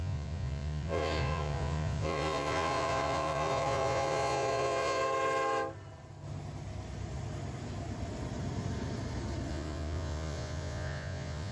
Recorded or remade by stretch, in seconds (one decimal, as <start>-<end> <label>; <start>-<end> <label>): 0.0-5.0 remade; 5.0-9.5 recorded; 9.5-11.5 remade